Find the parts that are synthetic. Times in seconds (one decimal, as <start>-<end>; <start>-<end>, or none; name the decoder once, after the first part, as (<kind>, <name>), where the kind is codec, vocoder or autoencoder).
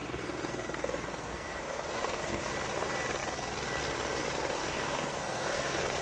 0.0-2.5 (codec, SNAC); 4.6-6.0